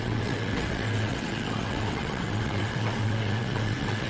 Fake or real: fake